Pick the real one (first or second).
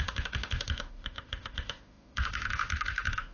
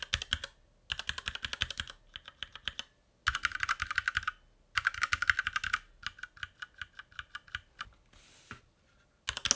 second